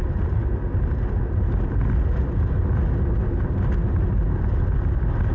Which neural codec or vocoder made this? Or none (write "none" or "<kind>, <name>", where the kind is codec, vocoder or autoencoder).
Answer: none